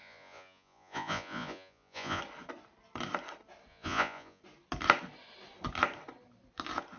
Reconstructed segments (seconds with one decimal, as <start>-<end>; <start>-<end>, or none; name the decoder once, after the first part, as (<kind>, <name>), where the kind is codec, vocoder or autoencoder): 0.0-2.2 (vocoder, Vocos); 3.7-4.4